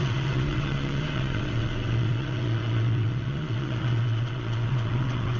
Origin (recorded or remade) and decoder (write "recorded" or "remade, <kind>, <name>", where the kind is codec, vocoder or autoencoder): remade, vocoder, WaveNeXt